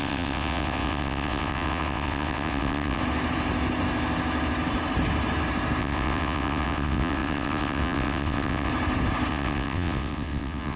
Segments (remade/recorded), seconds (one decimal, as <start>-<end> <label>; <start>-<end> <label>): 0.0-3.0 remade; 3.0-5.8 recorded; 5.8-8.7 remade; 8.7-9.3 recorded; 9.3-10.8 remade